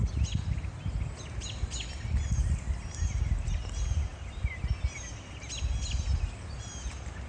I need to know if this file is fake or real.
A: real